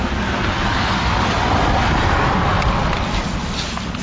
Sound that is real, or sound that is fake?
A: real